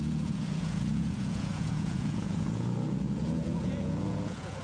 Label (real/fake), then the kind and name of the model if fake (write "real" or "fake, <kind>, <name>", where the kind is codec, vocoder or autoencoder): fake, vocoder, Vocos